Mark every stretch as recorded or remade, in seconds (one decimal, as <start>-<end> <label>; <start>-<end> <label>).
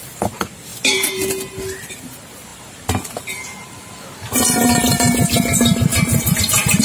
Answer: 0.0-0.7 recorded; 0.7-1.3 remade; 1.3-5.9 recorded; 5.9-6.8 remade